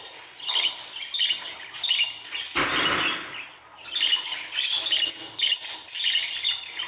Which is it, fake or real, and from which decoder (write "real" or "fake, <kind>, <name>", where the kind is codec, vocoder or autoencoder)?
real